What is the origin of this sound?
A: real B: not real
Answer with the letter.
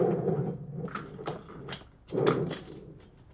A